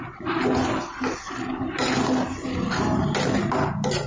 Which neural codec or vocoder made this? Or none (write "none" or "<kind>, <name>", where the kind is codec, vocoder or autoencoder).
none